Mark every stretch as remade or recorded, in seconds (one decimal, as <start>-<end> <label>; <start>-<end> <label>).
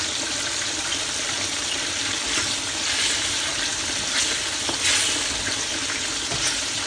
0.0-0.9 remade; 0.9-2.7 recorded; 2.7-6.9 remade